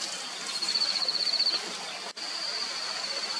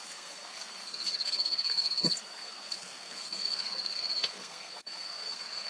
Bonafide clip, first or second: first